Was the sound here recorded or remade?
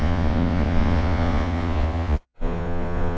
remade